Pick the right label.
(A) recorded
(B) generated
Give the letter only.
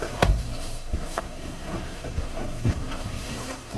B